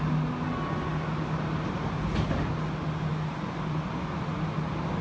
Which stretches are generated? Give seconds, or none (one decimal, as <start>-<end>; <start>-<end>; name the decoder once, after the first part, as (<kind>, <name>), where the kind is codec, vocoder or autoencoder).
none